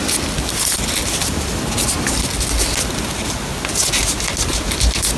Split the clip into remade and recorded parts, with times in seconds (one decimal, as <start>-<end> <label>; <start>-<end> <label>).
0.0-5.2 recorded